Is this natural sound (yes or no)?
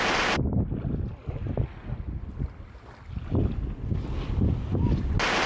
yes